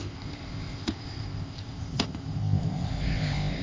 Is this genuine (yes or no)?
no